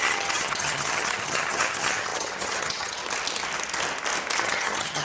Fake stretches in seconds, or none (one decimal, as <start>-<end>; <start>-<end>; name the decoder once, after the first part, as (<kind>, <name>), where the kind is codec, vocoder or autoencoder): 0.0-3.0 (vocoder, HiFi-GAN); 4.4-5.0